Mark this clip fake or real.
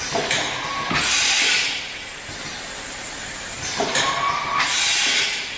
real